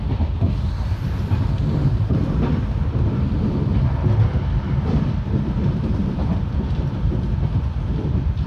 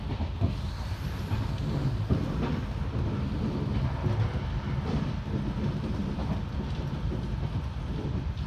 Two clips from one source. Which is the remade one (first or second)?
first